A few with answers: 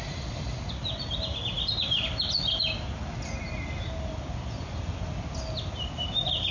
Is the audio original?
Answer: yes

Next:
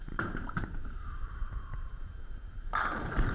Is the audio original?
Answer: no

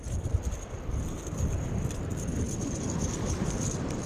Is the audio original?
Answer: no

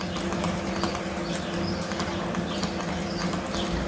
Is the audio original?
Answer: yes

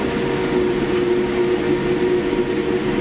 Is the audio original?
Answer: yes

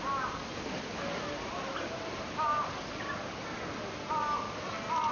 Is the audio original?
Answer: yes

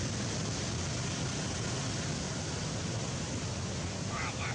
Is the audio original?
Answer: yes